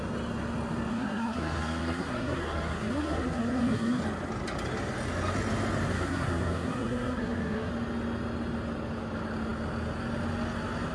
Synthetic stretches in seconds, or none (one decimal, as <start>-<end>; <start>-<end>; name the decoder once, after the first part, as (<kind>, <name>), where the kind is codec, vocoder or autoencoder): 0.9-4.0 (codec, SNAC); 5.9-7.7